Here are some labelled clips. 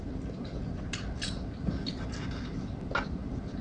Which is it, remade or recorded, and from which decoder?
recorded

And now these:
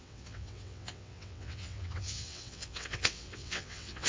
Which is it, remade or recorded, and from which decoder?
remade, vocoder, WaveNeXt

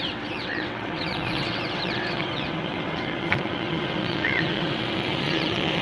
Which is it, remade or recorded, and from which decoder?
remade, vocoder, WaveNeXt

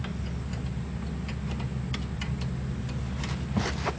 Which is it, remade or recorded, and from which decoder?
recorded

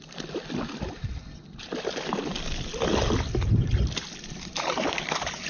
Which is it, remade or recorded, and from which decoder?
recorded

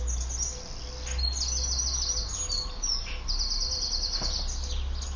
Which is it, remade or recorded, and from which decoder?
recorded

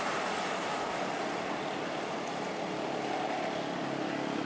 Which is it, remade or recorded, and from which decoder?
recorded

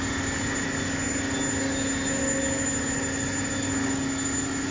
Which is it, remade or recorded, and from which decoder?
recorded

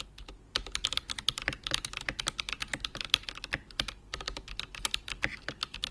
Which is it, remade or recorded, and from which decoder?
recorded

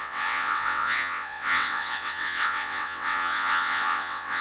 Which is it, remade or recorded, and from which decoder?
remade, vocoder, WaveNeXt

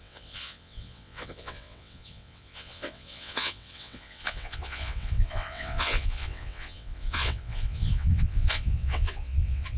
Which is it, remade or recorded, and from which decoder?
remade, vocoder, WaveNeXt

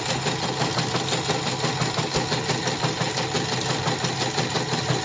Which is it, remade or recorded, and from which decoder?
recorded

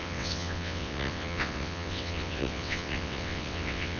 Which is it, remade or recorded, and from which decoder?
remade, vocoder, WaveNeXt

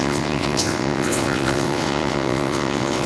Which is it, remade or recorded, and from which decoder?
remade, vocoder, WaveNeXt